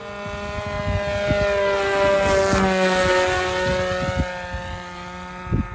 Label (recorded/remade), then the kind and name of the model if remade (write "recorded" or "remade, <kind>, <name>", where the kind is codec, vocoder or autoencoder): recorded